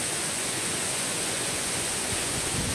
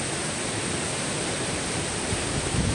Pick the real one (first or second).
second